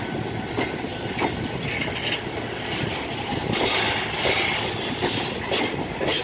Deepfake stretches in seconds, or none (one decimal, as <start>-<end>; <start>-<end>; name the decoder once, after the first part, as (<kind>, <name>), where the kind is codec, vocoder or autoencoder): none